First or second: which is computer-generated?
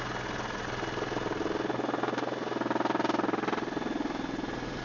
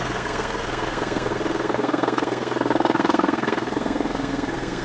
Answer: second